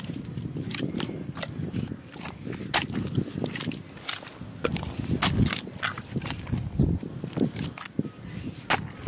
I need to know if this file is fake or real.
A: real